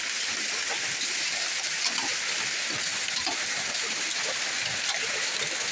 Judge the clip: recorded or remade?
recorded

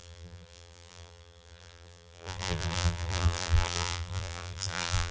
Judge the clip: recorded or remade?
remade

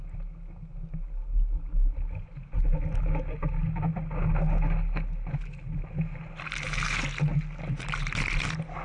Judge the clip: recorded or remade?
recorded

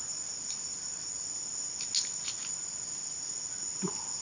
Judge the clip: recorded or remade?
recorded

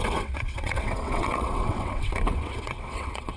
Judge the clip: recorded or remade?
remade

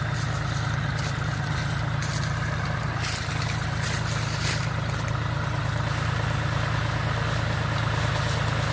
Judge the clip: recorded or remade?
recorded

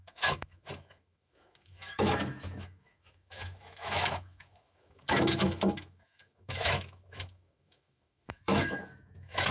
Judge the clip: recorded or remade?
remade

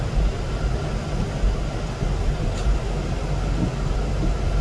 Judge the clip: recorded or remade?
recorded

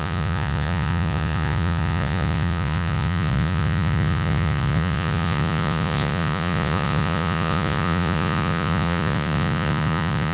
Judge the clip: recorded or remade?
remade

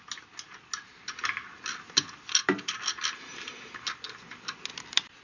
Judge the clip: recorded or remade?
recorded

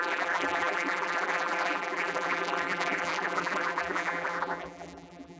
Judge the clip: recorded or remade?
remade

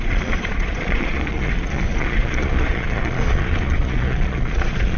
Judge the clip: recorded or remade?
remade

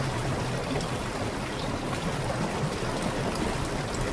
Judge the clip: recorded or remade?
recorded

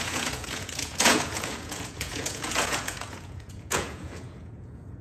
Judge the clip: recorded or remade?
remade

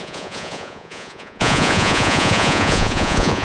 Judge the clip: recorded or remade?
remade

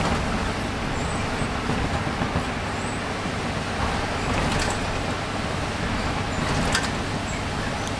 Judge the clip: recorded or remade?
recorded